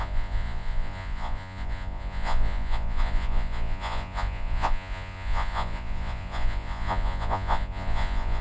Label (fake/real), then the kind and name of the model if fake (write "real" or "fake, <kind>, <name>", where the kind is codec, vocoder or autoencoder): fake, vocoder, Vocos